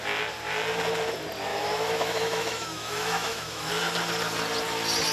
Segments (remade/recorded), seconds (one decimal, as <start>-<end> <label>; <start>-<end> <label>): 0.0-1.5 recorded; 1.5-3.7 remade; 3.7-5.1 recorded